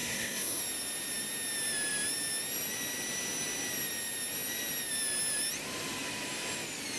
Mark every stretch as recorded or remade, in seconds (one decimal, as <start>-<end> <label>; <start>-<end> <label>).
0.0-0.6 remade; 0.6-7.0 recorded